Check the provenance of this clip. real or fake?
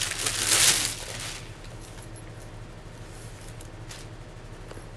real